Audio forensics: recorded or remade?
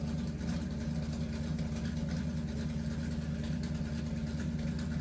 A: recorded